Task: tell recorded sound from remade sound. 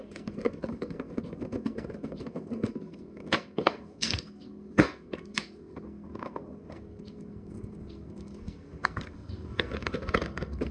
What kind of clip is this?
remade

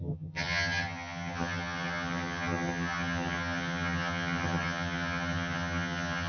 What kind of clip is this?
remade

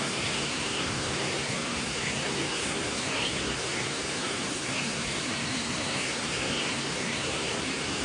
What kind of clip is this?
remade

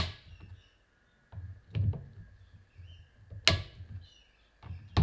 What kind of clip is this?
recorded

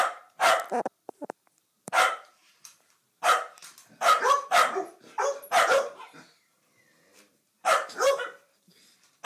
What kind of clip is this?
remade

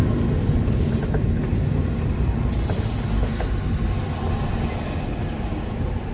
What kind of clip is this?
recorded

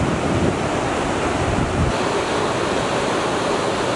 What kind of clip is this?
recorded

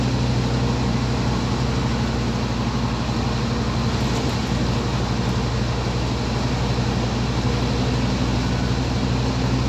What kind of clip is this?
recorded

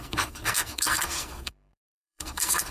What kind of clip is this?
remade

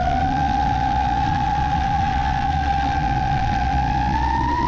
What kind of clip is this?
remade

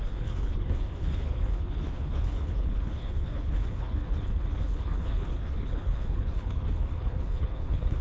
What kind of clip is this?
remade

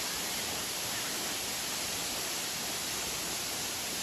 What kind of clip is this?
recorded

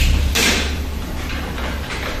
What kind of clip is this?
remade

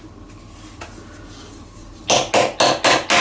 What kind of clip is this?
recorded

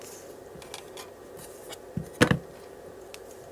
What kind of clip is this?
recorded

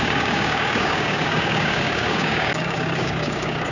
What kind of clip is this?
remade